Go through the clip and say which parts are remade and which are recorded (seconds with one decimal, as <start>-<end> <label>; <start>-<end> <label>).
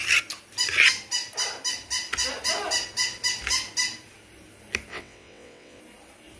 0.0-4.9 recorded; 4.9-5.8 remade; 5.8-6.4 recorded